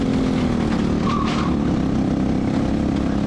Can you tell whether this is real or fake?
real